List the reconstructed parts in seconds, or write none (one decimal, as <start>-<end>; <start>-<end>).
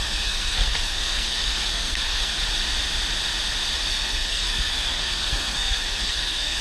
0.0-2.4; 3.9-6.6